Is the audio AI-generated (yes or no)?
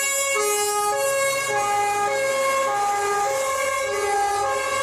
no